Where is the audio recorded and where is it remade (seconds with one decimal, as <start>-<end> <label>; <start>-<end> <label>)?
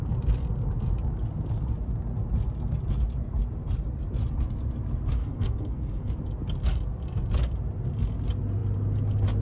0.0-5.2 recorded; 5.2-6.1 remade; 6.1-9.4 recorded